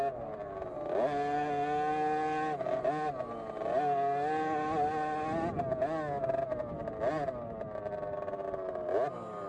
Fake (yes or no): no